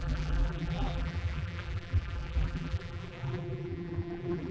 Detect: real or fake fake